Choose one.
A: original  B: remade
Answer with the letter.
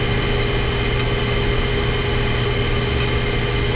A